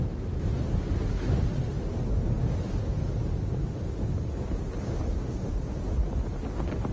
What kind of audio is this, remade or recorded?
recorded